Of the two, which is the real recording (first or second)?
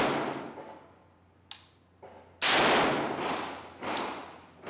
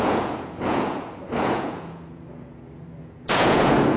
first